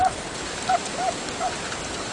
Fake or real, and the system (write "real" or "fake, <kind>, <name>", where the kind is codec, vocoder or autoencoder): fake, vocoder, BigVGAN v2